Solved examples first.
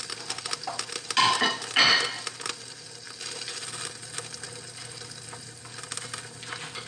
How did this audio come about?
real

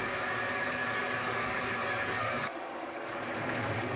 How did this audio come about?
fake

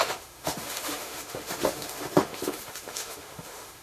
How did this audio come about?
fake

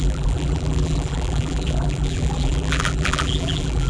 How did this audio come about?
fake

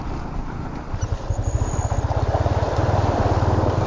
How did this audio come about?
fake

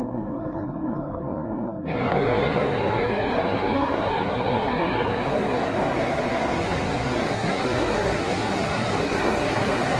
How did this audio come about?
fake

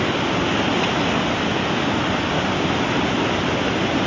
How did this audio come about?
real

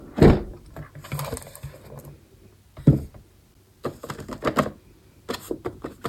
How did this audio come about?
real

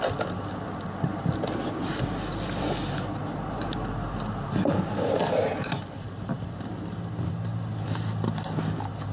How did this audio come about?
real